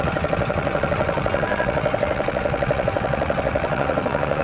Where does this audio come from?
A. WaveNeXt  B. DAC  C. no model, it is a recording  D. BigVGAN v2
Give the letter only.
A